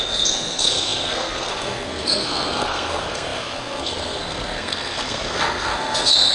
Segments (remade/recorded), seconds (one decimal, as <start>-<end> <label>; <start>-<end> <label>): 0.0-6.3 remade